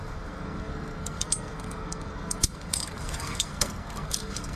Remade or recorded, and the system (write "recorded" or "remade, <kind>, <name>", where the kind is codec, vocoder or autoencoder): remade, codec, SNAC